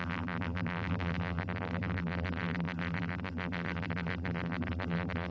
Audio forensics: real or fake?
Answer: fake